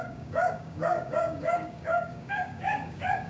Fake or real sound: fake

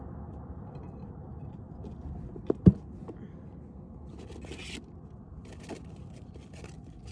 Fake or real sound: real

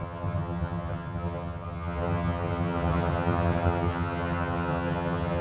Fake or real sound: fake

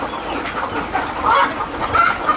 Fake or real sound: real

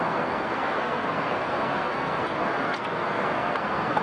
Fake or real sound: fake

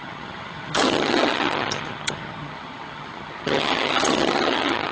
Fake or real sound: fake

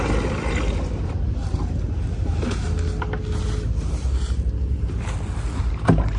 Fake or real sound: real